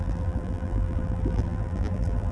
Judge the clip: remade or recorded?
remade